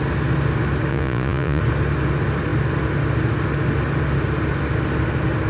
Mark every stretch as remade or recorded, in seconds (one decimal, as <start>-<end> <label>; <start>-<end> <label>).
0.0-0.9 recorded; 0.9-1.6 remade; 1.6-5.5 recorded